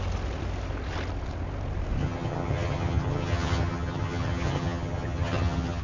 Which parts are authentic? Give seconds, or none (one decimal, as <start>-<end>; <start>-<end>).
0.0-2.0